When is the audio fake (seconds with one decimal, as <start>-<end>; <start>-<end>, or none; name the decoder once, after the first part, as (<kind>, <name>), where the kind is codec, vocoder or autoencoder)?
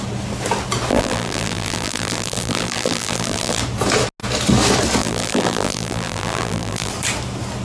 0.9-3.6 (vocoder, BigVGAN v2); 5.0-6.9